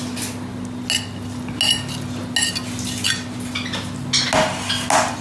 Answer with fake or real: real